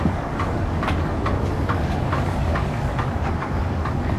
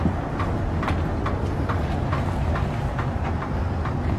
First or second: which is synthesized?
first